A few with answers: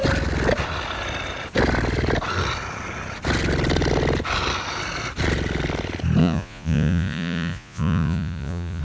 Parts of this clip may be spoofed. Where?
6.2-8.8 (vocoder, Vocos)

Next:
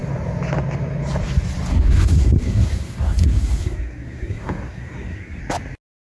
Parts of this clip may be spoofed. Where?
1.7-5.4 (codec, SNAC)

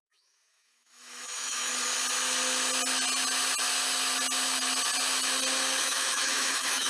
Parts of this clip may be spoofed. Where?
0.0-1.7 (autoencoder, DAC-VAE); 5.8-6.9